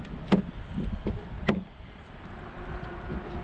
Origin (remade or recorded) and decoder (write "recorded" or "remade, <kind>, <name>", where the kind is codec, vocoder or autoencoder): recorded